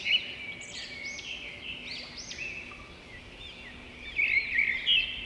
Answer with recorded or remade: recorded